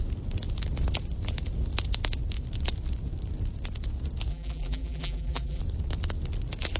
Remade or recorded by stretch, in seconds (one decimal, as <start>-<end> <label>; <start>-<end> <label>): 0.0-4.3 recorded; 4.3-5.6 remade; 5.6-6.8 recorded